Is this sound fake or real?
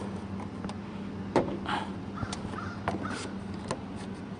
real